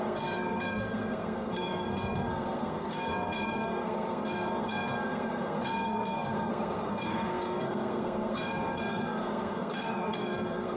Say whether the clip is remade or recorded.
remade